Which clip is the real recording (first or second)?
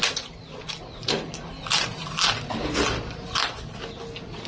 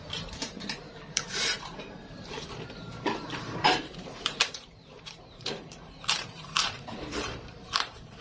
first